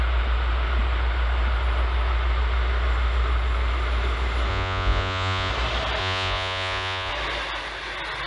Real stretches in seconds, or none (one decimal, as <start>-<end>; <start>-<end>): 0.0-4.5; 5.5-6.0; 7.1-8.3